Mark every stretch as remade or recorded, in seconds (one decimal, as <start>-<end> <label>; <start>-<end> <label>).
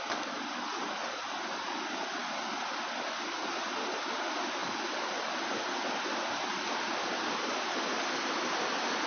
0.0-9.1 recorded